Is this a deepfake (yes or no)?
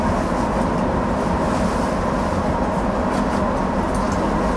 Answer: no